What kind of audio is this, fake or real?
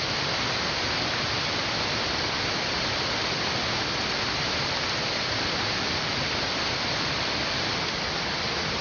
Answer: fake